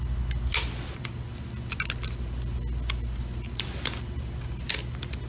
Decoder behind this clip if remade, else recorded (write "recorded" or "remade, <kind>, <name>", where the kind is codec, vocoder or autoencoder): recorded